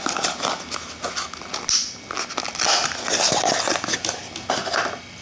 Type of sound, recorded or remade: recorded